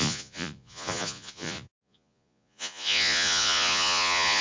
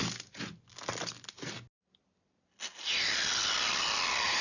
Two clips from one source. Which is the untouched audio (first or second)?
second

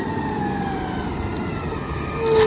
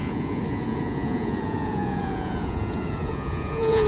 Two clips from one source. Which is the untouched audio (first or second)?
first